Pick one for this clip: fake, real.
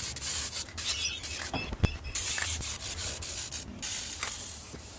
real